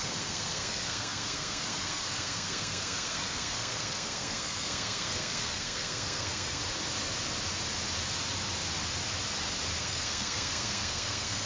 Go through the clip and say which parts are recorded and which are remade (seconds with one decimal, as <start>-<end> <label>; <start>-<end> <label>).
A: 0.0-6.6 remade; 6.6-9.8 recorded; 9.8-11.5 remade